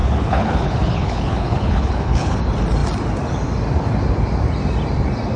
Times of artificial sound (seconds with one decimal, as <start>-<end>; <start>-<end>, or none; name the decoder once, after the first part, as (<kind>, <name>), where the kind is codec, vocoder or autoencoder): 0.0-2.4 (codec, HILCodec)